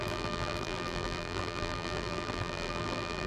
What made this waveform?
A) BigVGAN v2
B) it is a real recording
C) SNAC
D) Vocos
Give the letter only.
A